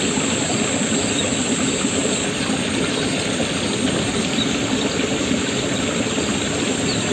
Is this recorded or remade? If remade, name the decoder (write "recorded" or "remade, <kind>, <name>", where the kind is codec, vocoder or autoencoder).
recorded